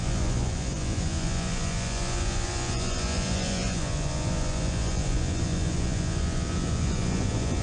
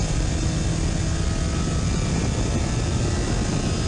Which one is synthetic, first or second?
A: first